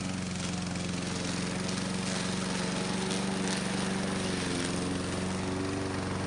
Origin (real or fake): real